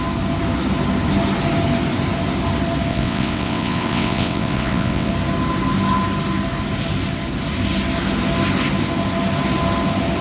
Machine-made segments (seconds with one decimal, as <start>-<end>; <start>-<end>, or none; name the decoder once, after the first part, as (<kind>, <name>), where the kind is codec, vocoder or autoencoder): 2.9-5.1 (vocoder, WaveNeXt)

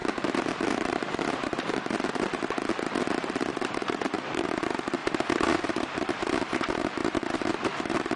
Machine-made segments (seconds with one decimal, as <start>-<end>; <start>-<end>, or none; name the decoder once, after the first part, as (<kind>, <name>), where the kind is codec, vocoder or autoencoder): 0.0-5.0 (vocoder, BigVGAN v2); 5.6-8.2

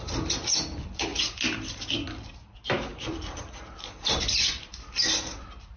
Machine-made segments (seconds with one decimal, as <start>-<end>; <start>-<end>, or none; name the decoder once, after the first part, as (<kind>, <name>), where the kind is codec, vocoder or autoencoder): 2.9-4.2 (vocoder, BigVGAN v2)